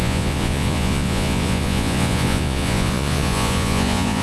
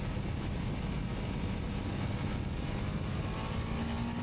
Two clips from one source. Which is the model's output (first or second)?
first